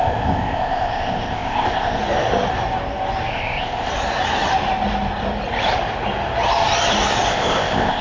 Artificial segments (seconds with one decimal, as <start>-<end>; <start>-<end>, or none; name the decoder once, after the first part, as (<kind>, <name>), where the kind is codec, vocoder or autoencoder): 0.0-2.0 (codec, ZipCodec); 3.3-3.9; 7.3-8.0